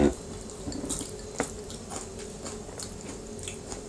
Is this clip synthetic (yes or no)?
no